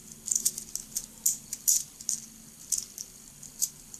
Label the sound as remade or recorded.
recorded